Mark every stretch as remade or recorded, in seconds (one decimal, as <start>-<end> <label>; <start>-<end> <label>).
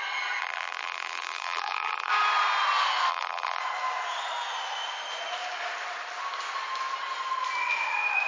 0.0-0.4 recorded; 0.4-2.1 remade; 2.1-3.1 recorded; 3.1-3.6 remade; 3.6-8.3 recorded